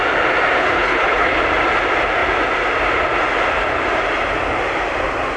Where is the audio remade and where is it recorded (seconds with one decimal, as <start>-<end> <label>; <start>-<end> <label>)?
0.0-0.6 recorded; 0.6-1.4 remade; 1.4-5.4 recorded